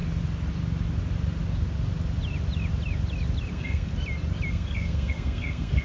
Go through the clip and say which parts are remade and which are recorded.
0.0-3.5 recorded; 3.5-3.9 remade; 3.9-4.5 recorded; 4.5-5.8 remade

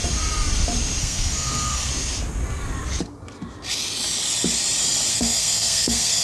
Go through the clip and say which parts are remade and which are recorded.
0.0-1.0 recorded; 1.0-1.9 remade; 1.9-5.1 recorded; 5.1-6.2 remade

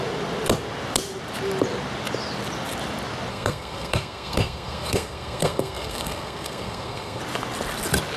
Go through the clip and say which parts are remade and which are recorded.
0.0-3.3 recorded; 3.3-7.2 remade; 7.2-8.2 recorded

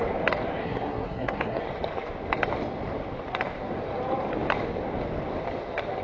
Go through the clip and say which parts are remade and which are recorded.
0.0-0.6 recorded; 0.6-1.6 remade; 1.6-6.0 recorded

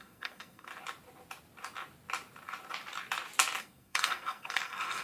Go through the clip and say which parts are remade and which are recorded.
0.0-0.7 remade; 0.7-3.6 recorded; 3.6-5.0 remade